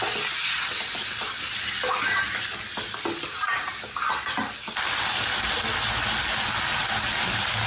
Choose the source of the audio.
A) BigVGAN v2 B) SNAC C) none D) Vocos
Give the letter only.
C